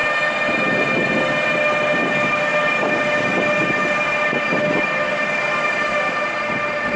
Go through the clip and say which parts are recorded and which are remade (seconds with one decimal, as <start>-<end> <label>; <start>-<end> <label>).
0.0-7.0 recorded

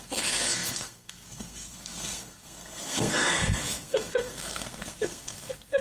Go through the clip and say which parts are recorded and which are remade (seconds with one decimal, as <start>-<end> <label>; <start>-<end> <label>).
0.0-5.8 remade

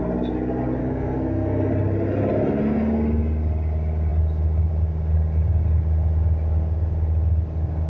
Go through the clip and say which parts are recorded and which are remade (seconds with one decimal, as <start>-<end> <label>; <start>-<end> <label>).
0.0-0.8 recorded; 0.8-1.7 remade; 1.7-7.9 recorded

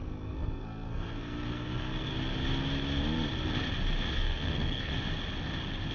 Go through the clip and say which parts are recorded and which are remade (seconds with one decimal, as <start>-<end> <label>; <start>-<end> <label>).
0.0-2.1 remade; 2.1-4.1 recorded; 4.1-4.9 remade; 4.9-5.9 recorded